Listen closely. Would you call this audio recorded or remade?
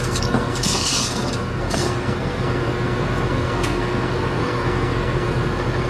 remade